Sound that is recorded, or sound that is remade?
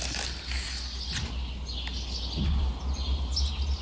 recorded